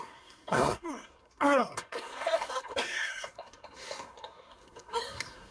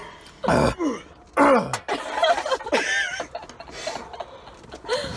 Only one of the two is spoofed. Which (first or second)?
first